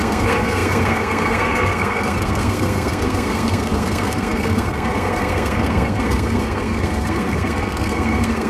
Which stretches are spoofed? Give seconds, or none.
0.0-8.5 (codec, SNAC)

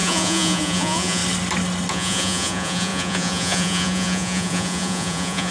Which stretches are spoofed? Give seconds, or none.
0.0-1.2 (vocoder, Vocos); 1.9-5.5